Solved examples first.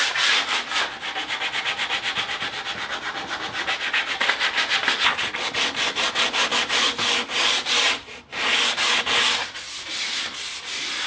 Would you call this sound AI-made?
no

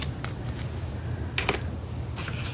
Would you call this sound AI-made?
no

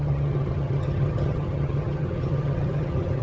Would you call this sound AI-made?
yes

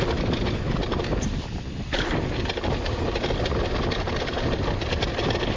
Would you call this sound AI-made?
no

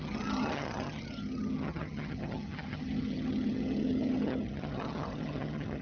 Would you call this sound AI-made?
yes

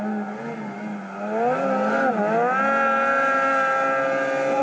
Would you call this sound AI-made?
no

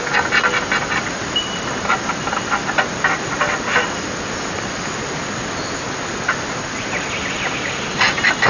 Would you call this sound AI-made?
no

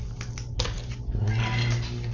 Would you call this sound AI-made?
no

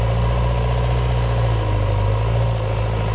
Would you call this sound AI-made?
no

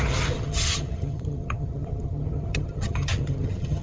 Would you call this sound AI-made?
yes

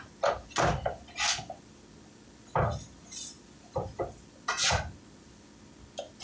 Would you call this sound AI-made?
no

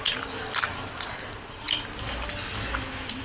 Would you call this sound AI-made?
no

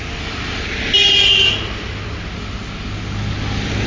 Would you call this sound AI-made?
no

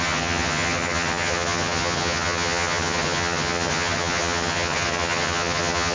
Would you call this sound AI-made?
yes